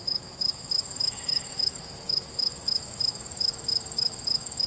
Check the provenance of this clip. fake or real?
fake